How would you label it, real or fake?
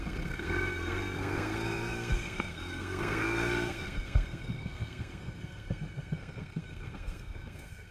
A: fake